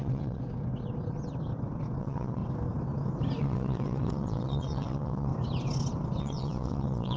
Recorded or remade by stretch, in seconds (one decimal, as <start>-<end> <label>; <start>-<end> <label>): 0.0-0.4 remade; 0.4-2.0 recorded; 2.0-2.4 remade; 2.4-3.4 recorded; 3.4-5.3 remade; 5.3-6.2 recorded; 6.2-7.2 remade